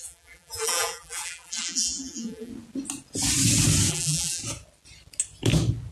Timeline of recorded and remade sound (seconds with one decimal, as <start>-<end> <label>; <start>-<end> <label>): 0.0-2.5 remade; 2.5-3.9 recorded; 3.9-4.4 remade; 4.4-5.9 recorded

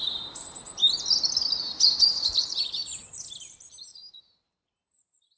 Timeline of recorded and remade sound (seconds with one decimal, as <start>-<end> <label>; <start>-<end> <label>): 0.0-0.8 remade; 0.8-1.6 recorded; 1.6-2.8 remade; 2.8-3.4 recorded; 3.4-5.4 remade

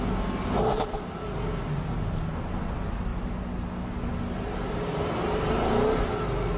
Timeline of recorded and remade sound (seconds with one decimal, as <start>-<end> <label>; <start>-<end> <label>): 0.0-6.6 recorded

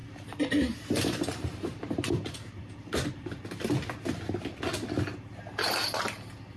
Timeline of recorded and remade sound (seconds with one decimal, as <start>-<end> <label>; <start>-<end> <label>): 0.0-3.4 remade; 3.4-6.6 recorded